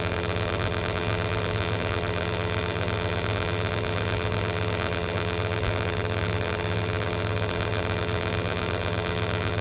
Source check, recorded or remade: remade